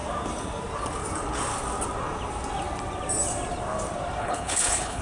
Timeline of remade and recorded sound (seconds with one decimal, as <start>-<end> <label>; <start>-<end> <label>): 0.0-4.2 recorded; 4.2-5.0 remade